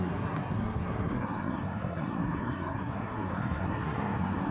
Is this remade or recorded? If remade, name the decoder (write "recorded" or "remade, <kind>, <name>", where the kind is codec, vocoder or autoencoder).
remade, codec, SNAC